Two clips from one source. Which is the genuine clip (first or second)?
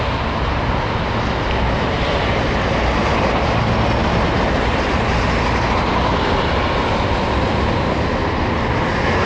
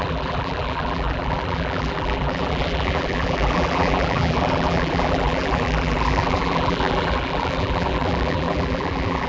first